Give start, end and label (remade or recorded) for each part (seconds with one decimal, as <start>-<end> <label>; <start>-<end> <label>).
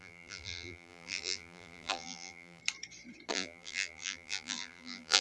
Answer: 0.0-2.6 remade; 2.6-3.3 recorded; 3.3-5.2 remade